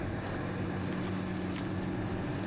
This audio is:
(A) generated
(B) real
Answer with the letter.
B